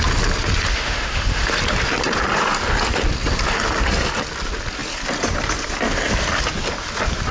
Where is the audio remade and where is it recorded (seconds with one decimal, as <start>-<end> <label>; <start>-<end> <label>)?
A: 0.0-0.7 recorded; 0.7-1.4 remade; 1.4-7.3 recorded